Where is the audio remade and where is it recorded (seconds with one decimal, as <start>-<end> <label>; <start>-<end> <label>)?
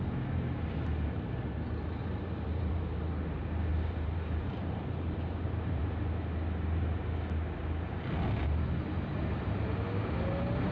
0.0-2.0 recorded; 2.0-2.8 remade; 2.8-3.7 recorded; 3.7-5.8 remade; 5.8-10.7 recorded